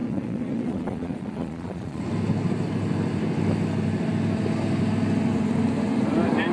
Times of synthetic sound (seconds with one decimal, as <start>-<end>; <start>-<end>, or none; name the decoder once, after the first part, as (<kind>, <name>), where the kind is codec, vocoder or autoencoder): 0.0-2.0 (vocoder, Vocos)